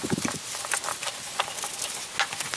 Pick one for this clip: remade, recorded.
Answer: recorded